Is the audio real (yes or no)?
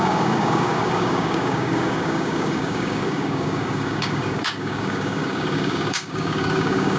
no